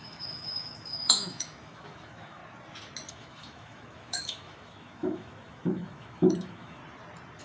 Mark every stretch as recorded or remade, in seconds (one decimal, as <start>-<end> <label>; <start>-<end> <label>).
0.0-2.4 remade; 2.4-3.1 recorded; 3.1-6.8 remade; 6.8-7.4 recorded